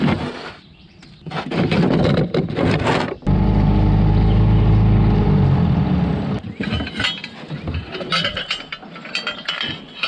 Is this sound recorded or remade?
recorded